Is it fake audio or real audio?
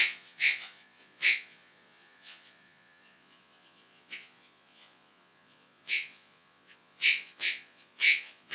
fake